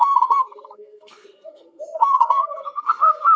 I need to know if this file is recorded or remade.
remade